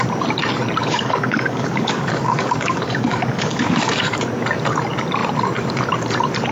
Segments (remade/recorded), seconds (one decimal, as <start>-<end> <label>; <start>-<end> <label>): 0.0-0.8 recorded; 0.8-4.2 remade; 4.2-6.5 recorded